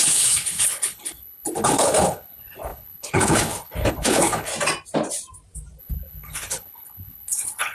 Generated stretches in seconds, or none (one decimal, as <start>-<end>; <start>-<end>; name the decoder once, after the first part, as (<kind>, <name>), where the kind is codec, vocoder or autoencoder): 0.0-4.5 (codec, HILCodec); 5.8-7.7